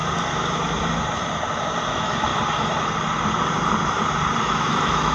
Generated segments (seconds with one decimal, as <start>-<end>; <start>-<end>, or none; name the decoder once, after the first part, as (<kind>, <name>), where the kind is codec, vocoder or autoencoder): 1.9-2.3 (autoencoder, DAC-VAE); 4.4-5.1